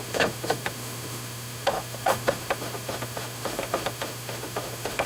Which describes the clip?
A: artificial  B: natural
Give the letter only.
A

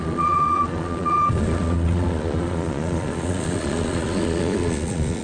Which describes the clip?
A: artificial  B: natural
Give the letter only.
A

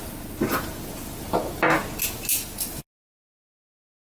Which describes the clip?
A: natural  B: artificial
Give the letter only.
A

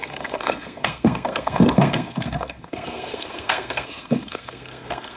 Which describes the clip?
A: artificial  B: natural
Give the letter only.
A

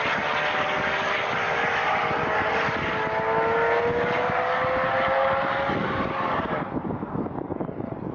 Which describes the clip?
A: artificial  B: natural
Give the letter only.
B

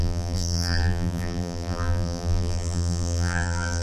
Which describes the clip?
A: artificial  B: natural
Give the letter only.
A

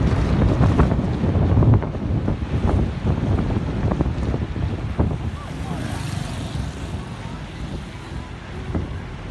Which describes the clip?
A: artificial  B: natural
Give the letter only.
B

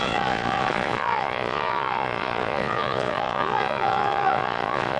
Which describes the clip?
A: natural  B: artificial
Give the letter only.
B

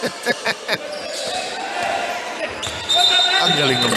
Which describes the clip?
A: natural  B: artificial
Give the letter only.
B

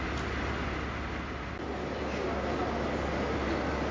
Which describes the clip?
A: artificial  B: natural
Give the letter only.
B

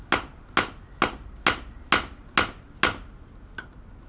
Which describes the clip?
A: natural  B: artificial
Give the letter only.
A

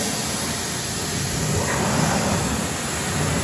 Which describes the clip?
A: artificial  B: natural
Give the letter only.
B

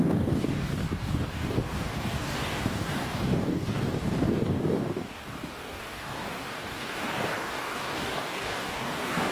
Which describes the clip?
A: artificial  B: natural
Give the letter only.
A